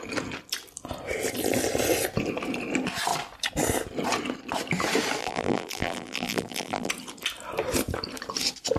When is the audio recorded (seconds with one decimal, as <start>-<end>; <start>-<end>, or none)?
0.0-5.2; 6.9-8.8